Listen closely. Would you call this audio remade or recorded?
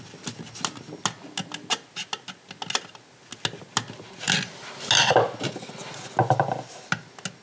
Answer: recorded